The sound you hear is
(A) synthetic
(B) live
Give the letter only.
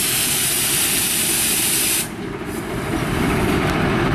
A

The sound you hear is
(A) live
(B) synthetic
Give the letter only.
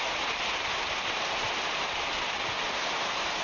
A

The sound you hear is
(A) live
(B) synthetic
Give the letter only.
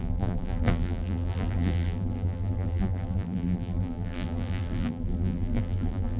B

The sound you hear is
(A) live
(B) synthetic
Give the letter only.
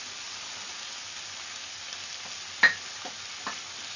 A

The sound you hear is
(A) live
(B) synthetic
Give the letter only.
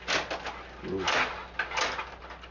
A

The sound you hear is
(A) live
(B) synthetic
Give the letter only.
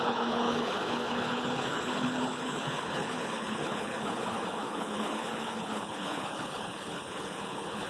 B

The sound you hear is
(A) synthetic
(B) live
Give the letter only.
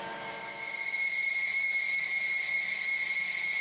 B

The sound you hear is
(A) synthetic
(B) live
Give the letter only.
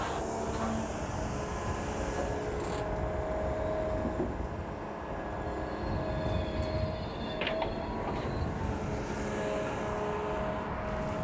B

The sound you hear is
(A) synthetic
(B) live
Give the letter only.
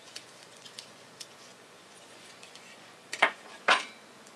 A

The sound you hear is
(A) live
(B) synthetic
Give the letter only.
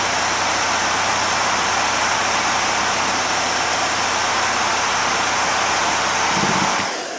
B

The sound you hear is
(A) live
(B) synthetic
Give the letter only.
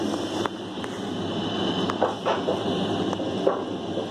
A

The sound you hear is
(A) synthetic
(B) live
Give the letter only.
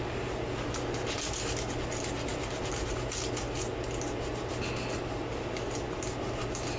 B